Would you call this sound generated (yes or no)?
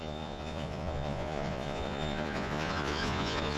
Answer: yes